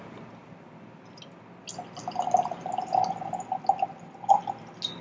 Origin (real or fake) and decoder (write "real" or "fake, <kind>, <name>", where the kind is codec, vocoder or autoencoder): real